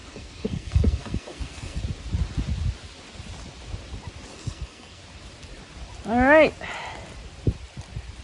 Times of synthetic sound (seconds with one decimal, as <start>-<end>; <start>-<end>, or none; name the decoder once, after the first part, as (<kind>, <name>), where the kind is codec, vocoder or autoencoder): 0.0-1.8 (codec, SNAC); 4.3-5.0